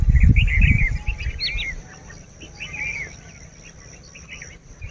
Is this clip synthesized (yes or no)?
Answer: no